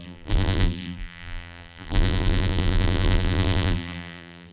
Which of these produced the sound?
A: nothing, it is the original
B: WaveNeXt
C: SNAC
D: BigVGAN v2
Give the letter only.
D